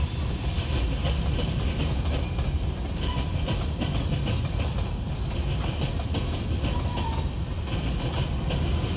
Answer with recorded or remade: recorded